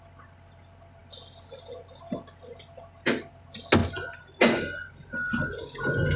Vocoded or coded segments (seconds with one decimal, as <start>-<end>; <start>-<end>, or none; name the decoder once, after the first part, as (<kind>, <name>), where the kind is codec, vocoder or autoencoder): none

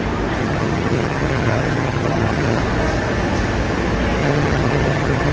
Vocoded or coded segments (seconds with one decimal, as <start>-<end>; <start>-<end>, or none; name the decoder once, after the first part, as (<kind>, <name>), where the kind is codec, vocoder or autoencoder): 0.4-2.6 (vocoder, HiFi-GAN); 4.2-5.3

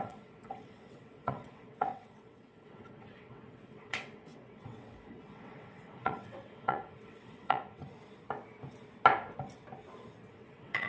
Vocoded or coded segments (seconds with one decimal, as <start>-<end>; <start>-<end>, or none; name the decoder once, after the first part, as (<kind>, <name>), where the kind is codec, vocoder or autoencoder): 0.0-7.8 (vocoder, WaveNeXt); 10.3-10.9